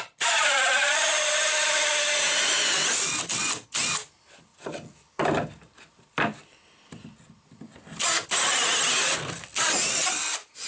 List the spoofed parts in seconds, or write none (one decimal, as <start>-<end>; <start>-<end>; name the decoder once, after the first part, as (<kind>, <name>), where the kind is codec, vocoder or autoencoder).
none